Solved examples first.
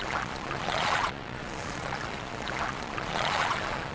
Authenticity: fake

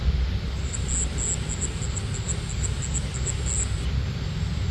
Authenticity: real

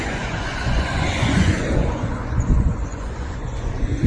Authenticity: fake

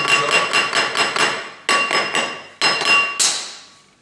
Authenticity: real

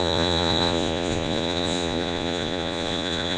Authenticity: fake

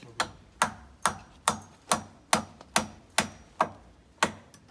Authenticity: real